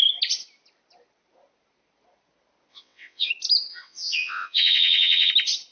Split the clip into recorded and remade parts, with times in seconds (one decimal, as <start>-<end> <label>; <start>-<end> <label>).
0.0-2.7 recorded; 2.7-3.3 remade; 3.3-3.7 recorded; 3.7-5.3 remade; 5.3-5.7 recorded